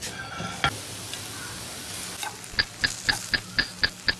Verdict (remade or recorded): recorded